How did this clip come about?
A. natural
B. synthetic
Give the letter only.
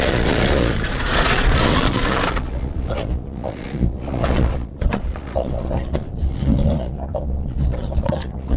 B